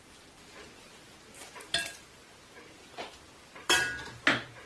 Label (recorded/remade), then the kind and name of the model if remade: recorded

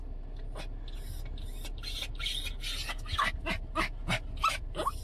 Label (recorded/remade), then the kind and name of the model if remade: recorded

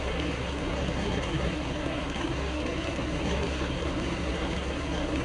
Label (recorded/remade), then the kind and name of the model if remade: remade, codec, SNAC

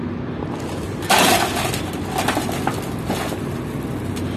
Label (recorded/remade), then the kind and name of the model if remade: recorded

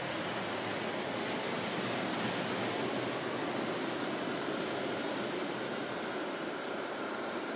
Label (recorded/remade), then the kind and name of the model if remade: recorded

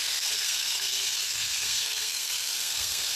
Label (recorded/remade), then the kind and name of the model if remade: remade, codec, SNAC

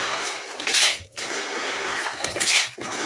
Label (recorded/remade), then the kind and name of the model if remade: remade, codec, SNAC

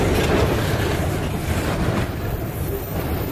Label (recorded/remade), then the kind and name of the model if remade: recorded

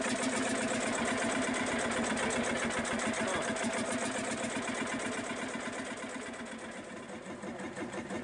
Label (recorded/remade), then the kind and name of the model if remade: recorded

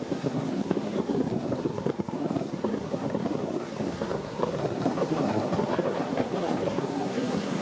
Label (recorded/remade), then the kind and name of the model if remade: remade, codec, SNAC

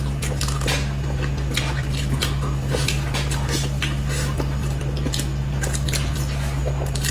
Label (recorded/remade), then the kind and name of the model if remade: recorded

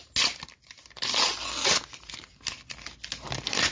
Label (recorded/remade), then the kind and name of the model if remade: recorded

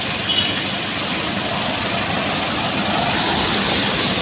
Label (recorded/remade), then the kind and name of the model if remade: recorded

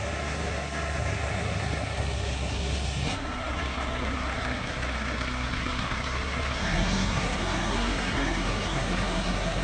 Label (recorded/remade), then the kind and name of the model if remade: remade, codec, SNAC